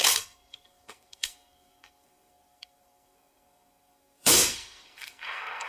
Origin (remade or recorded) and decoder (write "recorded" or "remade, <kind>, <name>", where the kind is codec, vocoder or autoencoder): remade, codec, SNAC